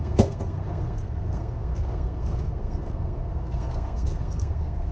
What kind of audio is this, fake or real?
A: fake